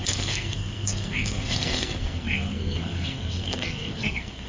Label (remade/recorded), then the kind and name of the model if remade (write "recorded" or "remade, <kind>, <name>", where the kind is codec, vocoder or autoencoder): remade, codec, SNAC